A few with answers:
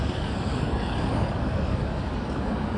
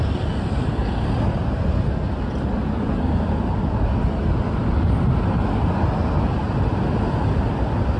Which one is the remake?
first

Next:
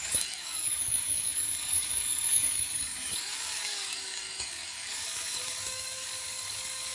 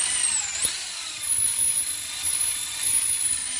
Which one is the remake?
first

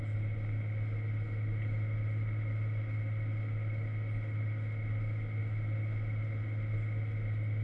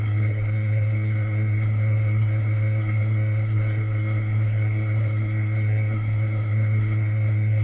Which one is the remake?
second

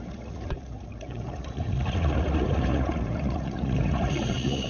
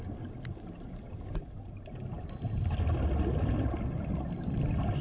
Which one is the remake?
first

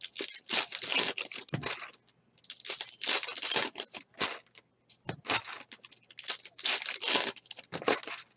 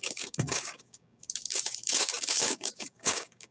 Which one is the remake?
second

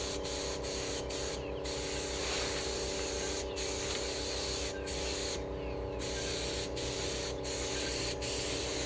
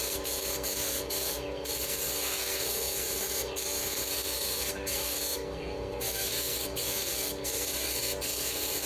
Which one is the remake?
second